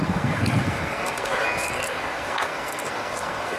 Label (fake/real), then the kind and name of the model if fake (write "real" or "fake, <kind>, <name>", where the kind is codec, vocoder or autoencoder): fake, codec, SNAC